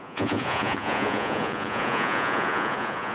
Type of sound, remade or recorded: remade